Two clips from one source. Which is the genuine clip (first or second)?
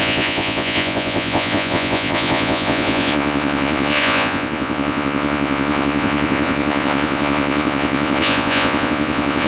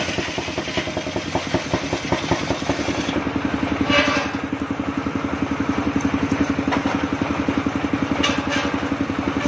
second